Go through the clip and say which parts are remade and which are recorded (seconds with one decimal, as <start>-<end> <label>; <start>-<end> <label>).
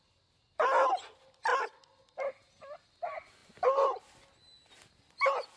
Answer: 0.0-5.6 recorded